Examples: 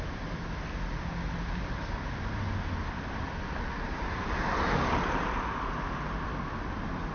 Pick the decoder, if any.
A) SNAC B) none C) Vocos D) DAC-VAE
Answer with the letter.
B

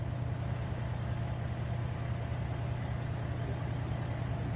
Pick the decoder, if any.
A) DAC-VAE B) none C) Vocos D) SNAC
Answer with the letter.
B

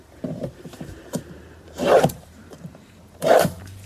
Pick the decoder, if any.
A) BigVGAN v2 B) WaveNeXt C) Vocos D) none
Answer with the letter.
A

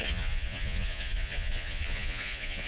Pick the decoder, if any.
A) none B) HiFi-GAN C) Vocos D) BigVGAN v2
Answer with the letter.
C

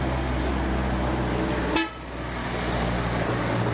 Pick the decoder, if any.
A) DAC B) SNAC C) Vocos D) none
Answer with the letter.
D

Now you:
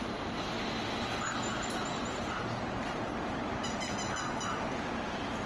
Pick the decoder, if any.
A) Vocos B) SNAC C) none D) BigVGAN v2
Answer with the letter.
C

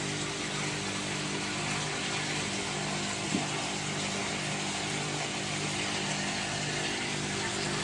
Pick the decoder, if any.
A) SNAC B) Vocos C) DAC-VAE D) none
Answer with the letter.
D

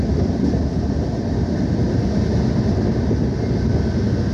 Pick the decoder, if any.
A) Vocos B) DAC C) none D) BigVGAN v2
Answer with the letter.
C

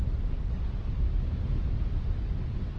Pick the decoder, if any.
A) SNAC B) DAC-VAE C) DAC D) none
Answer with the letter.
D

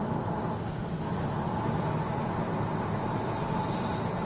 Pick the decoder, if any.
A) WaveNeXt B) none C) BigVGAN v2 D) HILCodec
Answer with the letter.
B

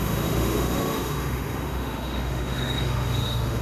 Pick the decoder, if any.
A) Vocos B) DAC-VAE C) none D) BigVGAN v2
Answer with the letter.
B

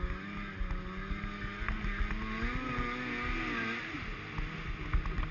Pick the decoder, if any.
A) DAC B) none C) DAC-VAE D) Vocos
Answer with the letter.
B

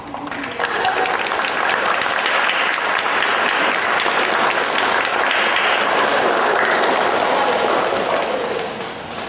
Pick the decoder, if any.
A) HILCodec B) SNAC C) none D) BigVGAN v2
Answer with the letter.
C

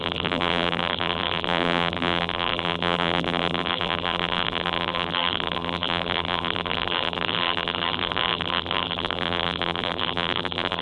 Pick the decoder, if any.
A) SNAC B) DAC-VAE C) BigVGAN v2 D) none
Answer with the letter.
C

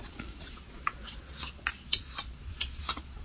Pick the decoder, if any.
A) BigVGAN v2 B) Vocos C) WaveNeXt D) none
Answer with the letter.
B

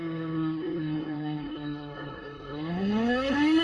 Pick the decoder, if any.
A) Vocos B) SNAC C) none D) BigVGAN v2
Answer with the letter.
B